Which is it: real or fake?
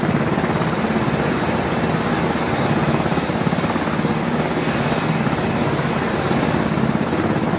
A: real